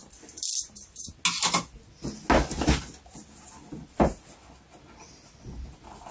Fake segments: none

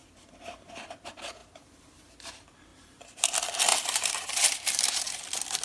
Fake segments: 0.0-0.7 (vocoder, BigVGAN v2); 1.4-2.3; 2.7-3.3; 3.7-5.1

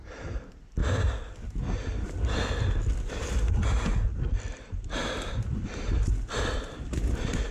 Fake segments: none

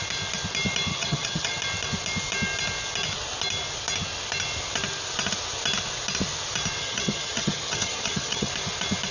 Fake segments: 0.9-1.6 (vocoder, HiFi-GAN); 6.8-8.5

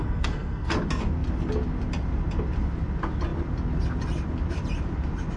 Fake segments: 0.0-0.7 (codec, SNAC)

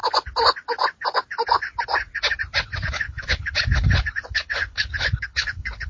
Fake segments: 2.9-5.9 (codec, HILCodec)